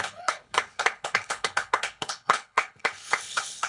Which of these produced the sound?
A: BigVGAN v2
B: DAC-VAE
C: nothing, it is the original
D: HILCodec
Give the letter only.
D